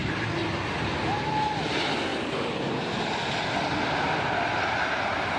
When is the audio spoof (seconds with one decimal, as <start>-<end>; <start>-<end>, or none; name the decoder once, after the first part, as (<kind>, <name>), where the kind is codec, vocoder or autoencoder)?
none

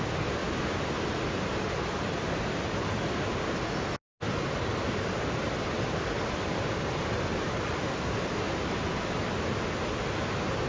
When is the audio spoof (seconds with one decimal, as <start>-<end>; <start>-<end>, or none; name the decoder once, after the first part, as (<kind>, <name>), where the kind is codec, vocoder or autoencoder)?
none